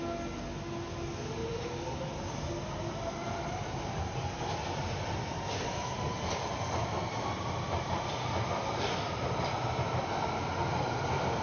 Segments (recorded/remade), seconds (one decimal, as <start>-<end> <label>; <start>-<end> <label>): 0.0-11.4 recorded